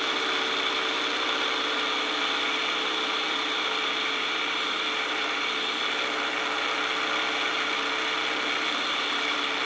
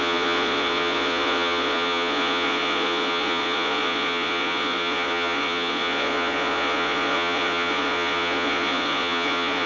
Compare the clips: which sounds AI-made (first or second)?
second